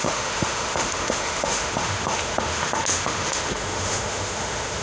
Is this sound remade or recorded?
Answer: remade